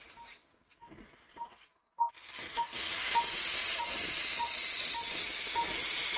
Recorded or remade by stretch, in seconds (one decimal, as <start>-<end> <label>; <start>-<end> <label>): 0.0-3.6 recorded; 3.6-4.9 remade; 4.9-6.2 recorded